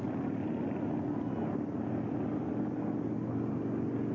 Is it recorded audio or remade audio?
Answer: recorded